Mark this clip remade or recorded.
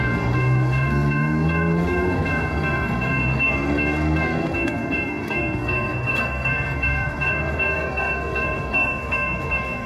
remade